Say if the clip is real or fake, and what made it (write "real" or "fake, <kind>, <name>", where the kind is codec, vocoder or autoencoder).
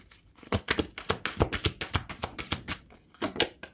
real